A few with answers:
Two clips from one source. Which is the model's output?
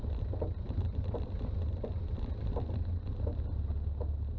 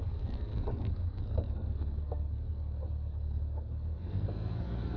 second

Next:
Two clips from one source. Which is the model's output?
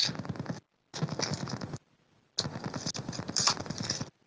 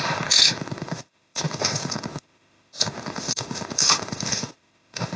second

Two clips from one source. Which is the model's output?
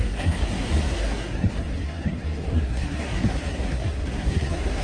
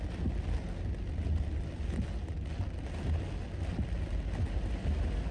first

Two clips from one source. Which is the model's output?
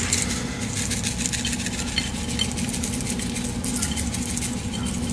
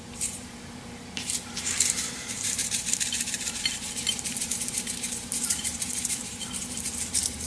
second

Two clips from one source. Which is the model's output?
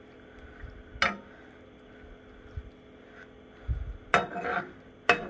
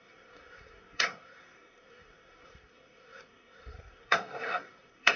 second